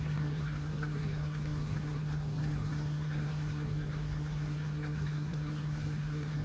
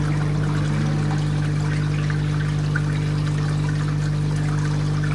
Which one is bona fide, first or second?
second